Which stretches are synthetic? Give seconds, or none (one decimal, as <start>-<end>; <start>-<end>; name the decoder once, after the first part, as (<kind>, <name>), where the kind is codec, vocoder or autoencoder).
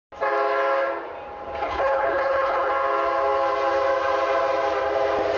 1.6-2.7 (codec, HILCodec)